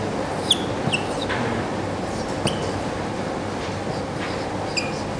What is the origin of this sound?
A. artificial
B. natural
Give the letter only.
B